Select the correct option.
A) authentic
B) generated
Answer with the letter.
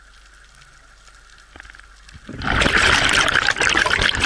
A